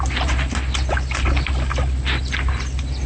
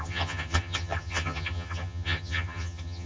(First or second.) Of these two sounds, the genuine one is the first